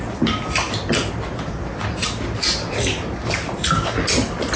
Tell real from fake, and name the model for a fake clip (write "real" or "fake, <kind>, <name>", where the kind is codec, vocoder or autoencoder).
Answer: real